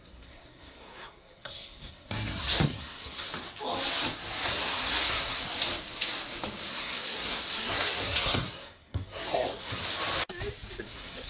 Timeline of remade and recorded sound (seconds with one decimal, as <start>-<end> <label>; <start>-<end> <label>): 0.0-3.3 remade; 3.3-4.5 recorded; 4.5-5.4 remade; 5.4-6.7 recorded; 6.7-9.8 remade; 9.8-10.8 recorded; 10.8-11.3 remade